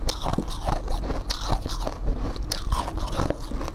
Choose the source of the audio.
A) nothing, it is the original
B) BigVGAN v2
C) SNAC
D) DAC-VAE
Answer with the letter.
A